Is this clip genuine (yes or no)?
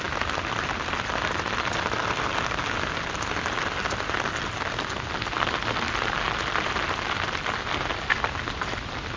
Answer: yes